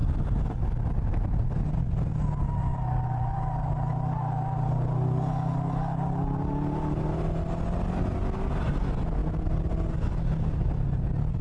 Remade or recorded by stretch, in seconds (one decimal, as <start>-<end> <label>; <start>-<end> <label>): 0.0-11.4 recorded